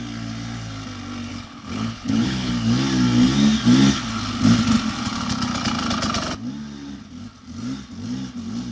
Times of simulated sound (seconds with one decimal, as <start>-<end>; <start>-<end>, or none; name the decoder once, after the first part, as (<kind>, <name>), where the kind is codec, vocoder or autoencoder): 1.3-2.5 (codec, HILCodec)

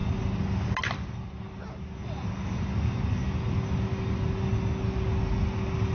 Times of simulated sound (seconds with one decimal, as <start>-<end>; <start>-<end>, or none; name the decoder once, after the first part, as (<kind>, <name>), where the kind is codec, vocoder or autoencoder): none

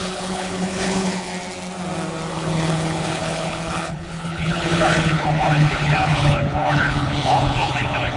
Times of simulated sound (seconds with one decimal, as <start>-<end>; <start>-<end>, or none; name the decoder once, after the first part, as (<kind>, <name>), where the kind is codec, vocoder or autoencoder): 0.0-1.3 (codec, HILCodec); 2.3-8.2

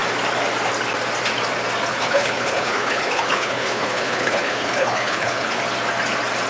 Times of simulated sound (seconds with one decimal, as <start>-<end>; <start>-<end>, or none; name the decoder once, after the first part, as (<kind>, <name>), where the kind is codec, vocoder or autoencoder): 1.9-5.6 (codec, HILCodec)

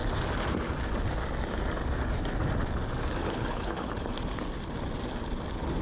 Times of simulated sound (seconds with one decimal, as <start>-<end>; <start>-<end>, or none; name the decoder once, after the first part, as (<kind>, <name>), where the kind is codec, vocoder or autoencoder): 3.2-3.9 (codec, HILCodec)

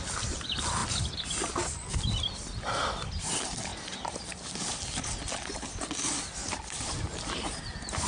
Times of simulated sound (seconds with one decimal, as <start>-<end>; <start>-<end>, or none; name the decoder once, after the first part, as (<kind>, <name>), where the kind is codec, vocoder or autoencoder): none